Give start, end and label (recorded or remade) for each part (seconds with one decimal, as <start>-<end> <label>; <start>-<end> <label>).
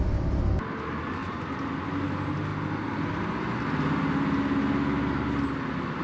0.0-6.0 recorded